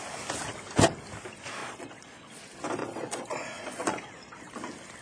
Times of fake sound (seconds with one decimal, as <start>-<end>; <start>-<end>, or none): 1.6-2.4; 2.8-4.5